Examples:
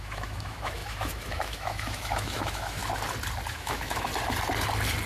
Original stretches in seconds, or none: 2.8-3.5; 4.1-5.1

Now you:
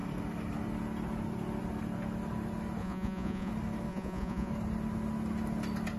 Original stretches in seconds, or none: 0.0-2.8; 3.5-3.9; 4.5-6.0

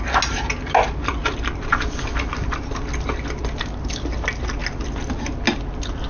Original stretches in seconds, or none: 0.0-6.1

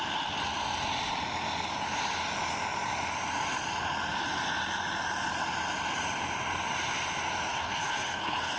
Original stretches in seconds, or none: 0.0-7.5

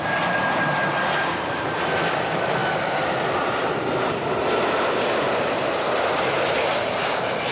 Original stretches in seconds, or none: 0.0-7.5

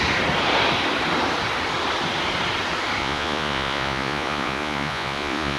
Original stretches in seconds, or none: 0.0-3.0

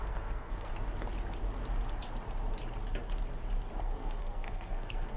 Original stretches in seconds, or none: 0.7-3.8

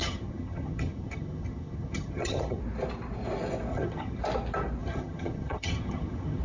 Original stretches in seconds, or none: 2.6-3.7; 4.2-4.8